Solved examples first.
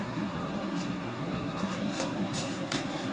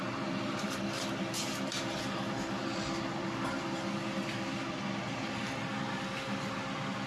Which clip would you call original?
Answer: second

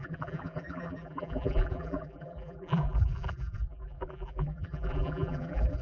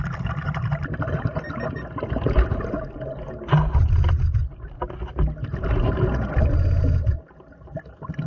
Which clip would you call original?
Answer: second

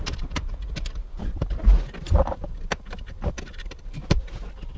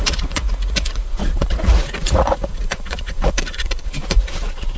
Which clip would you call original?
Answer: first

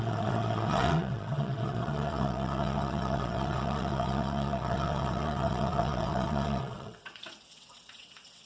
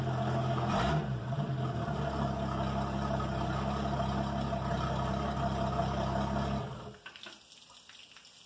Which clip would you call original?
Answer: second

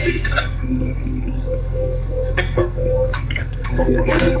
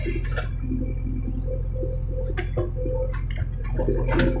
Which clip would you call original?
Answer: second